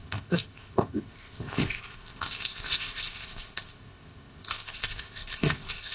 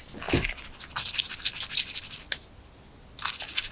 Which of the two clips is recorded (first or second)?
second